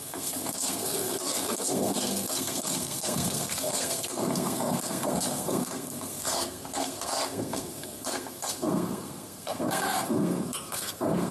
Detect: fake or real fake